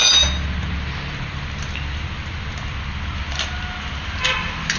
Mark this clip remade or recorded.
recorded